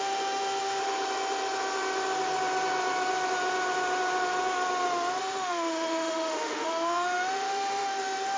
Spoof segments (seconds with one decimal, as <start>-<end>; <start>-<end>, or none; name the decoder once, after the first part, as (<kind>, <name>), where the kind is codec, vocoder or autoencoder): 0.0-0.8 (autoencoder, DAC-VAE); 5.2-8.4